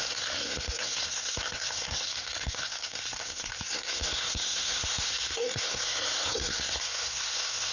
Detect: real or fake fake